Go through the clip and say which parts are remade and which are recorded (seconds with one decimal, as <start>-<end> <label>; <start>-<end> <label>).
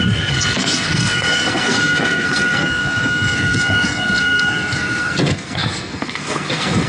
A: 0.0-6.9 remade